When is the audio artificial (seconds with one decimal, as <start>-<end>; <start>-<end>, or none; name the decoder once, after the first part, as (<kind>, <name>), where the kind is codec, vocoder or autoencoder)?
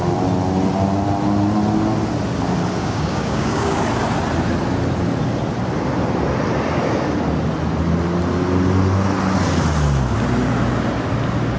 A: 2.8-3.8 (codec, DAC)